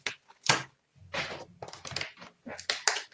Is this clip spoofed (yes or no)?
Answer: no